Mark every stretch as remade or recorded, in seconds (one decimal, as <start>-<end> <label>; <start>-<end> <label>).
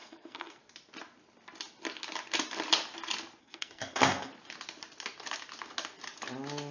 0.0-0.6 remade; 0.6-3.4 recorded; 3.4-4.3 remade; 4.3-6.7 recorded